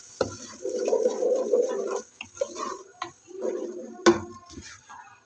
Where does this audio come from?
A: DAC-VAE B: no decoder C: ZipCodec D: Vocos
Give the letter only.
B